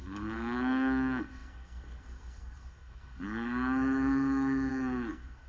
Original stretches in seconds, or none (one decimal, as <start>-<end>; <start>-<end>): none